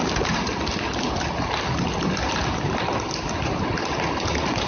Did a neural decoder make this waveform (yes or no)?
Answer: no